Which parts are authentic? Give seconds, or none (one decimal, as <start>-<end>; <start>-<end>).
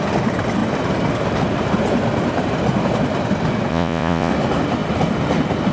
0.0-3.7; 4.3-5.7